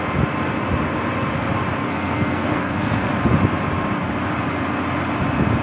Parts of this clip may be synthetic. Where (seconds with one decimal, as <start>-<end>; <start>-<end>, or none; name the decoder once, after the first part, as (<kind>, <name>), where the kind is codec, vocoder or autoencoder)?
1.8-3.1 (codec, SNAC)